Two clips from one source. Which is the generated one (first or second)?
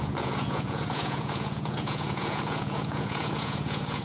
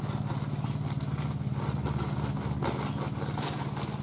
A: first